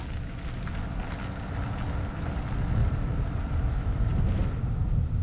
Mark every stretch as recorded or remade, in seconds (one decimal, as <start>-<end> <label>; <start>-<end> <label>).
0.0-2.8 recorded; 2.8-3.4 remade; 3.4-5.2 recorded